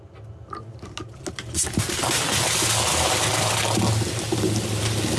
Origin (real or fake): real